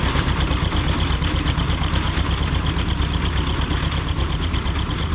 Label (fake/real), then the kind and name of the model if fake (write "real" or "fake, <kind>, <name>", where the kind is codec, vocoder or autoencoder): real